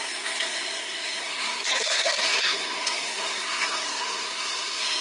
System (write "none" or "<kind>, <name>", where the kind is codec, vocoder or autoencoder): codec, SNAC